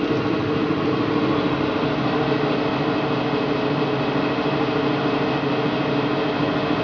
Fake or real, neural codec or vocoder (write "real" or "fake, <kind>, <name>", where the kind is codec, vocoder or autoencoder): real